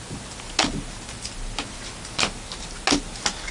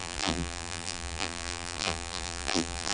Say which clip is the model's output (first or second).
second